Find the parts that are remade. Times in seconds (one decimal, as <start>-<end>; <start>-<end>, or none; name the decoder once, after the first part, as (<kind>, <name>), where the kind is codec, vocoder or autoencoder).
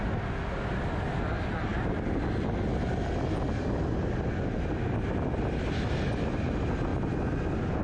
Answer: none